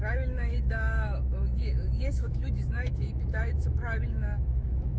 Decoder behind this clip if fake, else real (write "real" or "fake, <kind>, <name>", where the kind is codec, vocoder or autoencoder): fake, autoencoder, DAC-VAE